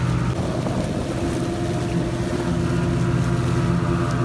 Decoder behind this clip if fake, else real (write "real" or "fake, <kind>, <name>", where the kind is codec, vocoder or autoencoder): real